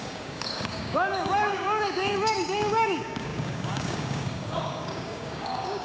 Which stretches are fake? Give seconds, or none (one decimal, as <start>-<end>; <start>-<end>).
0.0-5.8